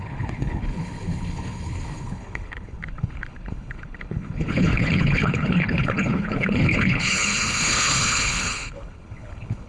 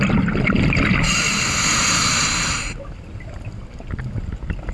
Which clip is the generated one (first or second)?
first